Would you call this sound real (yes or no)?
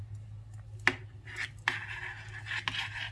yes